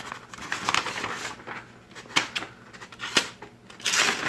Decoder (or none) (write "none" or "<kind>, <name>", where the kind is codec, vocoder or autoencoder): none